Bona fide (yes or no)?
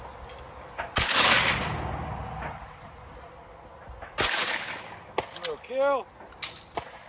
yes